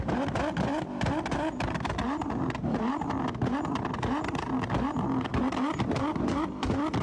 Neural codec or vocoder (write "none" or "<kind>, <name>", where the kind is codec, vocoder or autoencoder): none